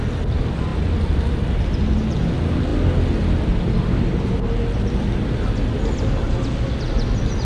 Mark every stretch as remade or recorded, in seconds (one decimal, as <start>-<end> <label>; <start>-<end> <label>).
0.0-7.4 recorded